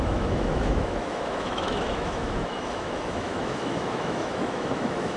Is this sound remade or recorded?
remade